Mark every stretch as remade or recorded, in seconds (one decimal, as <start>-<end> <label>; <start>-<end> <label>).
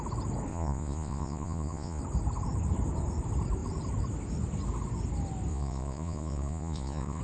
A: 0.0-0.5 recorded; 0.5-2.0 remade; 2.0-5.5 recorded; 5.5-7.2 remade